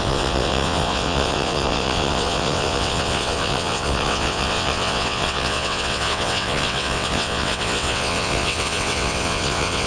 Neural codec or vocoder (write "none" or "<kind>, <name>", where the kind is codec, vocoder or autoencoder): vocoder, WaveNeXt